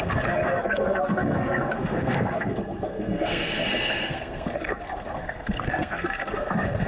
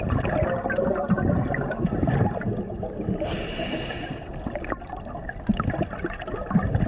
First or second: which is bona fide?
second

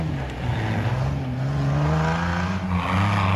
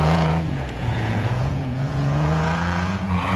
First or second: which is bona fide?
first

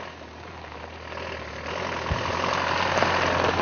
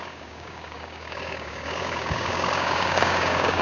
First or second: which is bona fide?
first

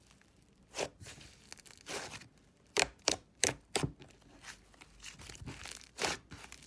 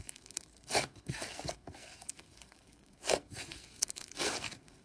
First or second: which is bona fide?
first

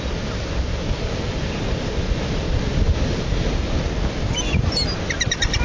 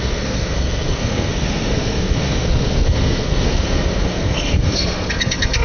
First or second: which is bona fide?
first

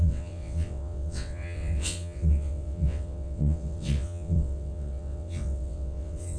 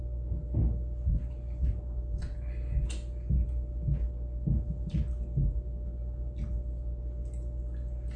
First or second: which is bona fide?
second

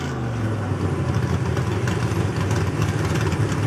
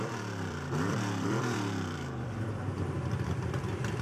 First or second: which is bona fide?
first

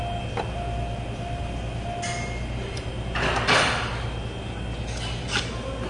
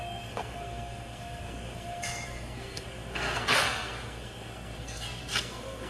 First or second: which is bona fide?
first